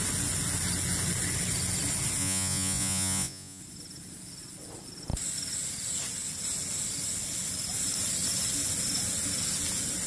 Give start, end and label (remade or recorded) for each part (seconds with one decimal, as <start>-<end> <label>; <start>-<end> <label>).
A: 0.0-2.2 recorded; 2.2-3.6 remade; 3.6-10.1 recorded